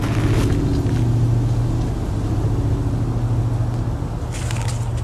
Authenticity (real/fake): real